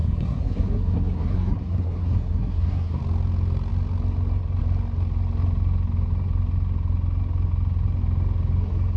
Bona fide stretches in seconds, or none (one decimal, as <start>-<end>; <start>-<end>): 3.0-9.0